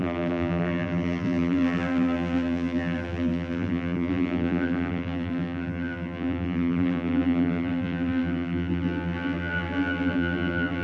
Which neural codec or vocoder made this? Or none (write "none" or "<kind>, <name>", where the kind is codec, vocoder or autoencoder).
vocoder, BigVGAN v2